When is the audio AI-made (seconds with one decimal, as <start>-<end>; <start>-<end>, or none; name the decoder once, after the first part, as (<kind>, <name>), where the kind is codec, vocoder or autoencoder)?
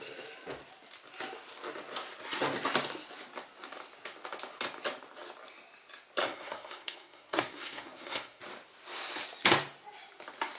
6.2-8.4 (codec, SNAC)